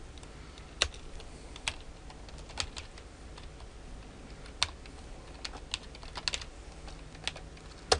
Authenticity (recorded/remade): recorded